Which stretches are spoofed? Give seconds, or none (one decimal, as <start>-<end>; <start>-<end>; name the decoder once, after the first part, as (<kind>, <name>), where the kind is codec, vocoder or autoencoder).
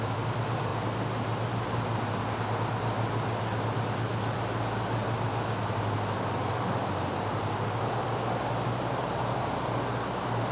none